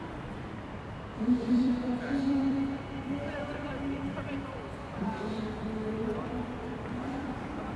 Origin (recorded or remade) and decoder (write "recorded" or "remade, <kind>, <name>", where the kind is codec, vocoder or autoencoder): remade, vocoder, BigVGAN v2